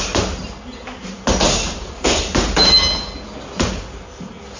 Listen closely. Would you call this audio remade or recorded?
recorded